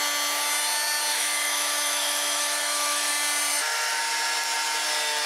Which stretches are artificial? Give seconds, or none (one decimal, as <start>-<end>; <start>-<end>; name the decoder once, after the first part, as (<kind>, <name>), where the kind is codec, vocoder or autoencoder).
1.1-3.1 (autoencoder, DAC-VAE); 3.5-4.0